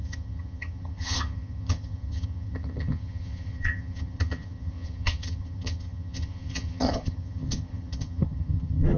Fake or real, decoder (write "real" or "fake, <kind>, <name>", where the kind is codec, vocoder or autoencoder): fake, vocoder, HiFi-GAN